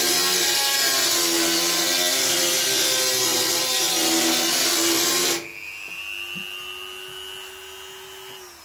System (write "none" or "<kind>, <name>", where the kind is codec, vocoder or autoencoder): none